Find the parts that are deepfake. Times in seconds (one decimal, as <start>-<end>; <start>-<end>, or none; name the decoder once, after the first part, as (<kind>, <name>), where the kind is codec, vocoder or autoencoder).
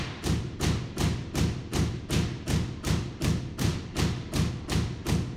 none